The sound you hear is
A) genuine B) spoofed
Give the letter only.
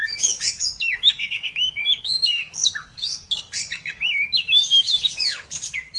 B